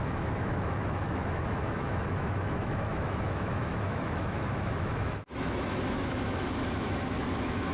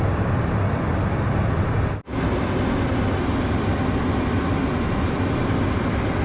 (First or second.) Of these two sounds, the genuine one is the second